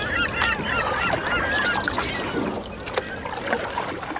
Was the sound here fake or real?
real